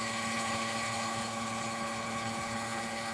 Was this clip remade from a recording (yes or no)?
yes